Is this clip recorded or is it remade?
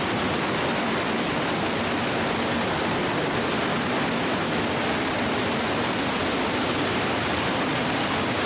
recorded